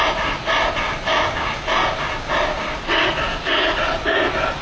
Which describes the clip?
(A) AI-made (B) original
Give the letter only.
B